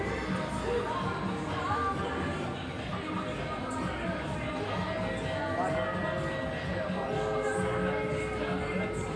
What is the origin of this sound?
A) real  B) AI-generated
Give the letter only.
A